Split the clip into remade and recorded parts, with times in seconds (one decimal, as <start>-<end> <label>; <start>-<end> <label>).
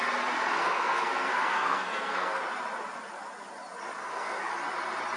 0.0-0.6 recorded; 0.6-2.4 remade; 2.4-4.0 recorded; 4.0-4.5 remade; 4.5-5.2 recorded